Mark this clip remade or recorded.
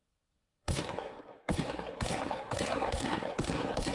remade